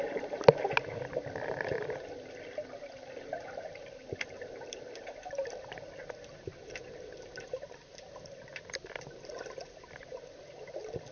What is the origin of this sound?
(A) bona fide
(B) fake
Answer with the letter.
A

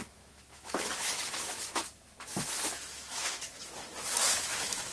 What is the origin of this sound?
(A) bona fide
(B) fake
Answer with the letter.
B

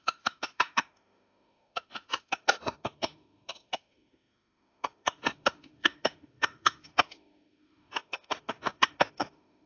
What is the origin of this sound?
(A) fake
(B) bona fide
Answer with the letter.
A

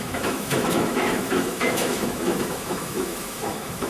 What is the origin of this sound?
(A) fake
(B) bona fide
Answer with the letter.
A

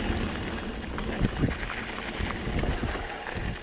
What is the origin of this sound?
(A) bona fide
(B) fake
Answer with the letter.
A